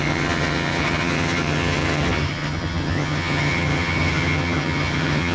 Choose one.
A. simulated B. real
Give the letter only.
A